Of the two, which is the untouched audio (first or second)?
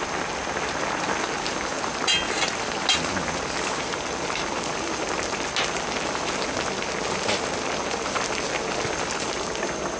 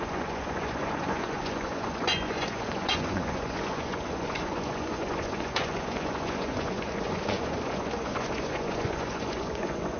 first